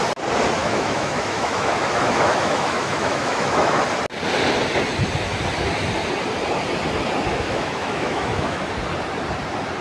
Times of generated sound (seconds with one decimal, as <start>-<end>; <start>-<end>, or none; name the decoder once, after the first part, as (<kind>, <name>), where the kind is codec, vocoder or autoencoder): 0.6-3.8 (autoencoder, DAC-VAE); 7.3-8.6